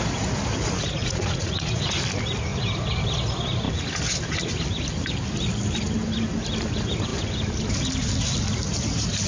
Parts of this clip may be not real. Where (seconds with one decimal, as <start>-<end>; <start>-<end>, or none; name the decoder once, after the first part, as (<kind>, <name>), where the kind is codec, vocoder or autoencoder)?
1.0-1.8 (vocoder, Vocos)